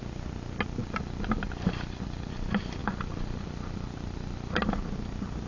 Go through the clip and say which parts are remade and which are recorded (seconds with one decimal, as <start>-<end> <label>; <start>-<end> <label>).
0.0-0.8 recorded; 0.8-2.3 remade; 2.3-2.8 recorded; 2.8-4.6 remade; 4.6-5.5 recorded